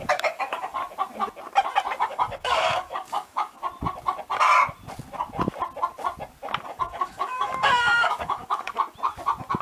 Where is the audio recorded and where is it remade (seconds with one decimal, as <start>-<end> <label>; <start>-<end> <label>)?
0.0-0.8 remade; 0.8-2.0 recorded; 2.0-3.6 remade; 3.6-6.7 recorded; 6.7-8.7 remade; 8.7-9.6 recorded

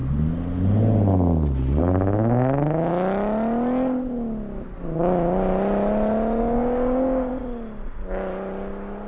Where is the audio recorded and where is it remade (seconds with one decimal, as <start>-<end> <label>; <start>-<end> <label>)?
0.0-1.8 recorded; 1.8-2.9 remade; 2.9-6.4 recorded; 6.4-7.3 remade; 7.3-9.1 recorded